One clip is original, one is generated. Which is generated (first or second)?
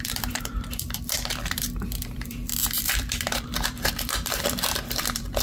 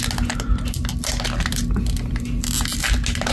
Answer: first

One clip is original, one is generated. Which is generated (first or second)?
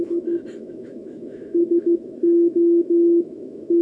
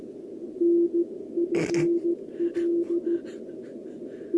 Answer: first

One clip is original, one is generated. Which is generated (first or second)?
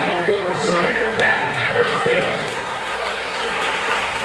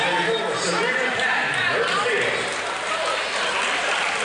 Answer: first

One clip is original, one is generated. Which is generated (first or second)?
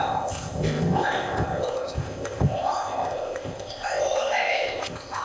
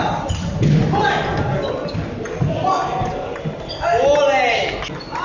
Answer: first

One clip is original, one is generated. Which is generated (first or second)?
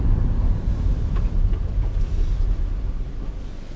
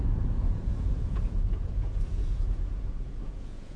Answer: second